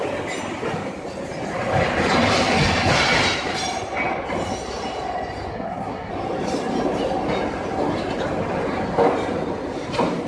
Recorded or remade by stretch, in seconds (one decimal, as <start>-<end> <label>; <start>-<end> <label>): 0.0-5.5 recorded; 5.5-6.1 remade; 6.1-10.3 recorded